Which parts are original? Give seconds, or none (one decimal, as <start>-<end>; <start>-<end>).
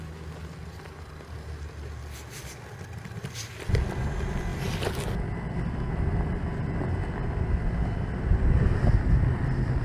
0.0-9.8